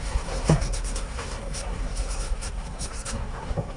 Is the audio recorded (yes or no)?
no